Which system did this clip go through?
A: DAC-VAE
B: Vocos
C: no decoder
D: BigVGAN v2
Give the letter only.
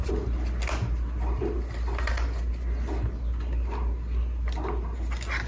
C